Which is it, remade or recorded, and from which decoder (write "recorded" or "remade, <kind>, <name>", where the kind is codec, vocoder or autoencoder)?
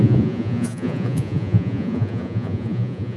remade, vocoder, Vocos